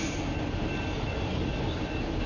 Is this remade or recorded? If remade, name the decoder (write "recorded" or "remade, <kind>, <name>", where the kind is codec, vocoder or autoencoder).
recorded